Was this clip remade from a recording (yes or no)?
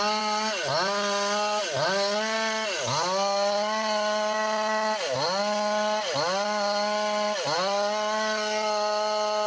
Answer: no